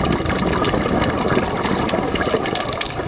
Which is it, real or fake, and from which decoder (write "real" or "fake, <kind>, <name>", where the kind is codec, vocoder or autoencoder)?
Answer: real